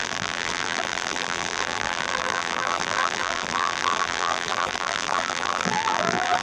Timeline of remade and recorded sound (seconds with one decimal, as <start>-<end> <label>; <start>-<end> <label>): 0.0-6.4 remade